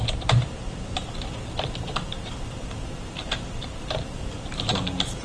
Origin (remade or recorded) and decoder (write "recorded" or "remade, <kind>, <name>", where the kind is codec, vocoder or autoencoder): remade, vocoder, BigVGAN v2